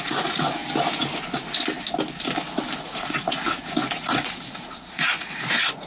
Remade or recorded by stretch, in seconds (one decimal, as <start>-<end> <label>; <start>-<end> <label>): 0.0-0.6 remade; 0.6-2.8 recorded; 2.8-5.9 remade